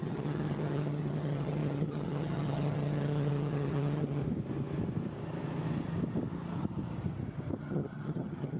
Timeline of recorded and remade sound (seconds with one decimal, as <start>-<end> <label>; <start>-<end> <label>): 0.0-4.2 remade; 4.2-7.6 recorded; 7.6-8.6 remade